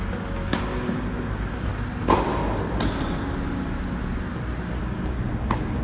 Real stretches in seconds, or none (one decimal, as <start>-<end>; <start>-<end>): 1.7-4.8